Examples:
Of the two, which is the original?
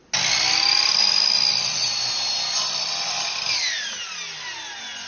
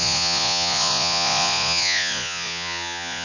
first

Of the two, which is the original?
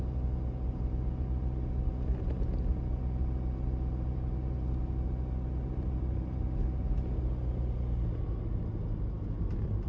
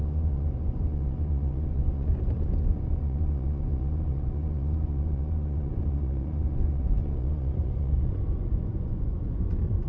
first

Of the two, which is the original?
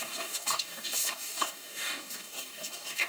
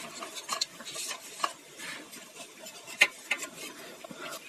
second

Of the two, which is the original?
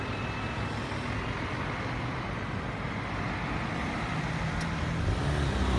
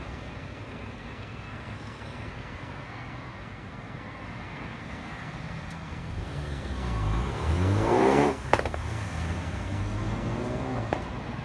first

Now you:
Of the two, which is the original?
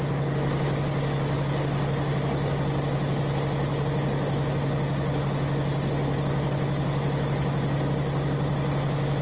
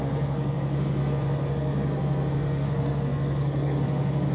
first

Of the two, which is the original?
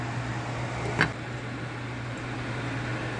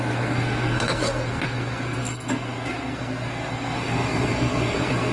first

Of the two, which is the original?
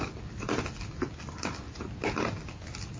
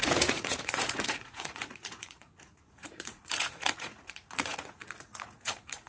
first